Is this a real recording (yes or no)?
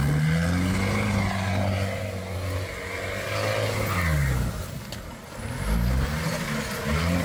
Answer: yes